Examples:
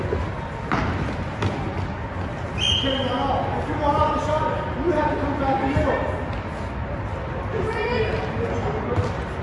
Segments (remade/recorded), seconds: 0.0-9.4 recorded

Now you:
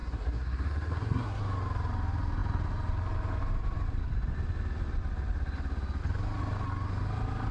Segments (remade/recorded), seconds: 0.0-1.4 remade; 1.4-7.5 recorded

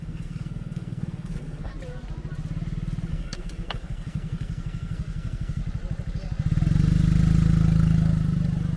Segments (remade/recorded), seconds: 0.0-1.7 remade; 1.7-3.1 recorded; 3.1-5.6 remade; 5.6-8.8 recorded

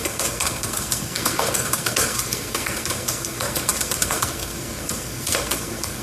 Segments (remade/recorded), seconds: 0.0-6.0 remade

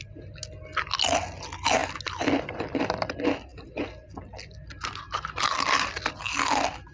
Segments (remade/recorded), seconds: 0.0-6.9 recorded